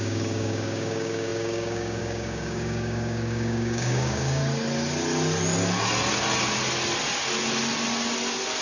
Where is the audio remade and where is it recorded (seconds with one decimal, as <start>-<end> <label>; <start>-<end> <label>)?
0.0-4.4 remade; 4.4-8.6 recorded